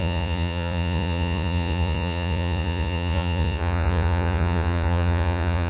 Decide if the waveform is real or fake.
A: fake